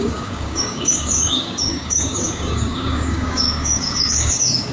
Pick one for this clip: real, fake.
fake